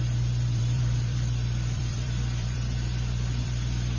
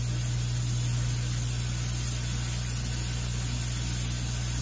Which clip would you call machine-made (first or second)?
first